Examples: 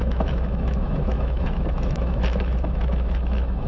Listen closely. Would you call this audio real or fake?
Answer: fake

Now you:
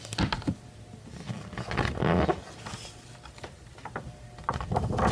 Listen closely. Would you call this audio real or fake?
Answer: real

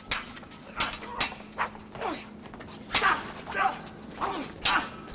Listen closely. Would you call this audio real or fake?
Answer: real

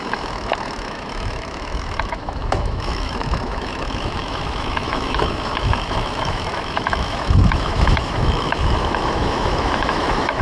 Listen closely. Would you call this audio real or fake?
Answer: fake